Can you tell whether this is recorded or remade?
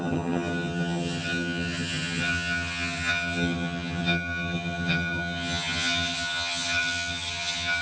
remade